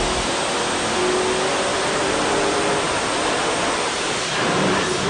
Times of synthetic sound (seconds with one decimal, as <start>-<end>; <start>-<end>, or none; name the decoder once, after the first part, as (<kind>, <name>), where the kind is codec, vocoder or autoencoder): 1.7-5.1 (vocoder, BigVGAN v2)